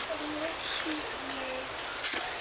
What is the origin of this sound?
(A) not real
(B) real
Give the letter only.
B